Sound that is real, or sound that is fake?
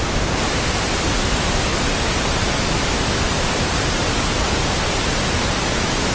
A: real